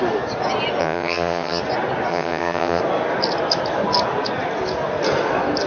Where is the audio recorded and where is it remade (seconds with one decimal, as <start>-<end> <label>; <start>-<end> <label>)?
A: 0.0-0.8 recorded; 0.8-1.6 remade; 1.6-2.1 recorded; 2.1-2.8 remade; 2.8-5.7 recorded